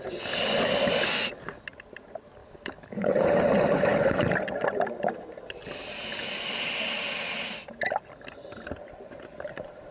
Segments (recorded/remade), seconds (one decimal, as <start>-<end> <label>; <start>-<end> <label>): 0.0-2.4 recorded; 2.4-3.1 remade; 3.1-9.9 recorded